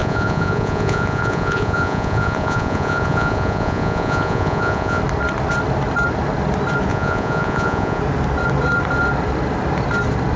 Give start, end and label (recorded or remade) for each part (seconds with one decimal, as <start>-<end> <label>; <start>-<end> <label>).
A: 0.0-5.0 remade; 5.0-6.9 recorded; 6.9-8.0 remade; 8.0-10.4 recorded